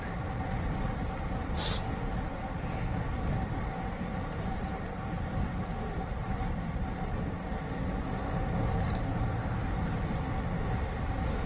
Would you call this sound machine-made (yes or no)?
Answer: no